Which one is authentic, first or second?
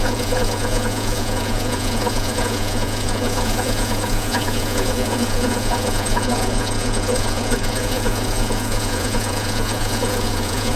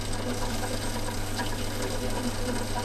second